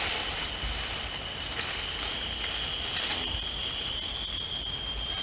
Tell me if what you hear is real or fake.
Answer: real